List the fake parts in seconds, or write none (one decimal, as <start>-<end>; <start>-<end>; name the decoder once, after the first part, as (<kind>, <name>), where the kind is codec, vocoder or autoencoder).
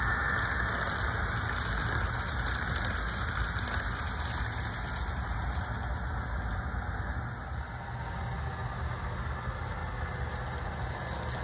none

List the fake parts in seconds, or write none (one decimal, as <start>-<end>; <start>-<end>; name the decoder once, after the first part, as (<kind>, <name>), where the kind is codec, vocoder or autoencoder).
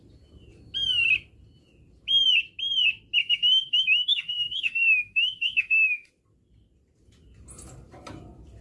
3.2-6.1 (autoencoder, DAC-VAE)